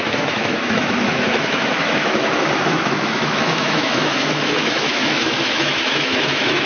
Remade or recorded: remade